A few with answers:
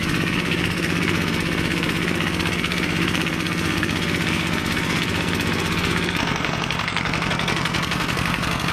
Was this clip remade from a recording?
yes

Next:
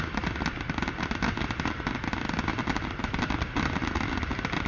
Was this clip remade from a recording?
no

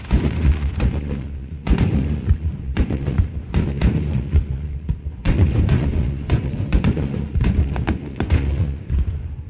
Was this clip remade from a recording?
yes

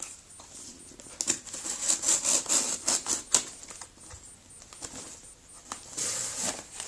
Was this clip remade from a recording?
no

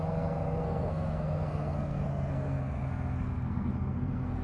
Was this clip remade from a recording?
yes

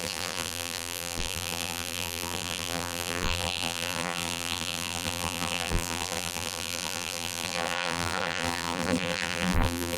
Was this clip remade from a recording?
yes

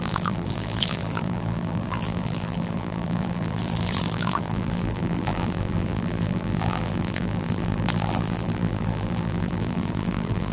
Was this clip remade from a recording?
yes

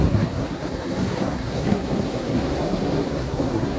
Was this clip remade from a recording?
yes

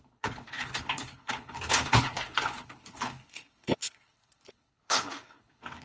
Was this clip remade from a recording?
yes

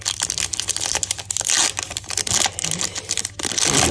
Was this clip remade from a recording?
no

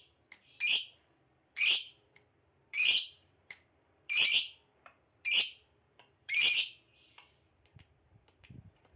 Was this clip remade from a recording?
yes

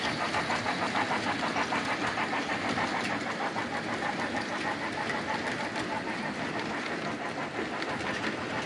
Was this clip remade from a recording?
no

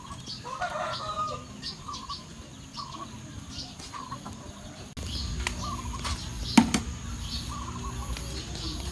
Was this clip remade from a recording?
no